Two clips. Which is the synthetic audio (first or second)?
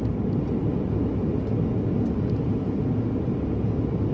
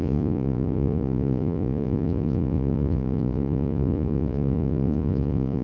second